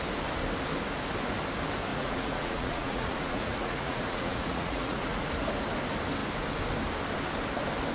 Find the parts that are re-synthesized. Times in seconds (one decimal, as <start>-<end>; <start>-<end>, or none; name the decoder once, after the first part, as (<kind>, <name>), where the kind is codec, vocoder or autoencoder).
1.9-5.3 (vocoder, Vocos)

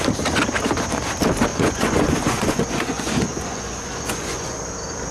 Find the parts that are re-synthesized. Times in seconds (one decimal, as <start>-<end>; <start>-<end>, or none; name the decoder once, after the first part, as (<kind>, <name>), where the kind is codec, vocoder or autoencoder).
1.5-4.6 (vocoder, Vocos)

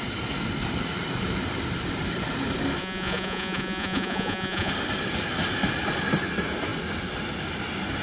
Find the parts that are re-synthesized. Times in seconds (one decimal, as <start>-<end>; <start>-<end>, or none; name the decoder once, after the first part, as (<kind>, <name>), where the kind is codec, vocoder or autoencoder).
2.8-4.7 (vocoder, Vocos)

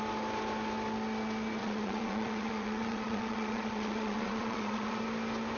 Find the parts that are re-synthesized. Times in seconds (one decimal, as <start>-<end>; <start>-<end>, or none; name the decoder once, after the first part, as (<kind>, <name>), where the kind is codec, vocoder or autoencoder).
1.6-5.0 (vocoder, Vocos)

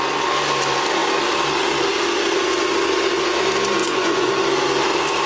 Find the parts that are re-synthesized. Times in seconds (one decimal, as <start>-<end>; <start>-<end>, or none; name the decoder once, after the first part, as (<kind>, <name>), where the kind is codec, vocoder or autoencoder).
3.8-4.3 (vocoder, Vocos)